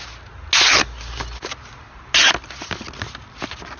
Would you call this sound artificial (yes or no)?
no